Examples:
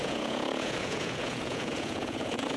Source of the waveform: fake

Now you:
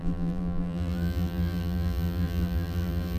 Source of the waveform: fake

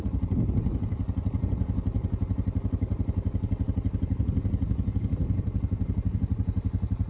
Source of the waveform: real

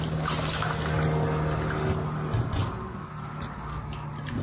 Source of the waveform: real